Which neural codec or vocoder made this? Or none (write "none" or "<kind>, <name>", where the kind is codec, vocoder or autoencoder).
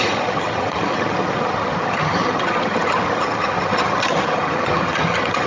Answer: vocoder, HiFi-GAN